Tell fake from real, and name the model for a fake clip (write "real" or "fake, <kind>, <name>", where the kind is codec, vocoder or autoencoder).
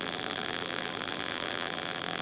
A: fake, vocoder, BigVGAN v2